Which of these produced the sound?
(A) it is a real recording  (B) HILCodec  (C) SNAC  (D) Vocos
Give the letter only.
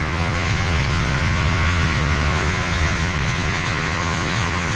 D